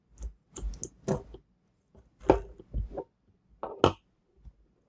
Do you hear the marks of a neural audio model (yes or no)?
no